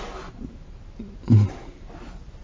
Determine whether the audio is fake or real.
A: real